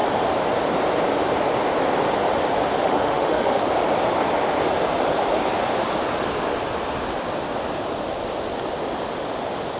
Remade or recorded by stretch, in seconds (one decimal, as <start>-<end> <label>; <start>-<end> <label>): 0.0-2.8 recorded; 2.8-3.7 remade; 3.7-9.8 recorded